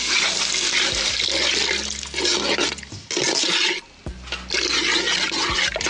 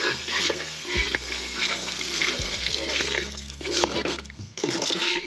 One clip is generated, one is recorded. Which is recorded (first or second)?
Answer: first